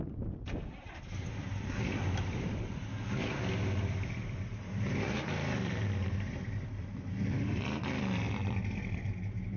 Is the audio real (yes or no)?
no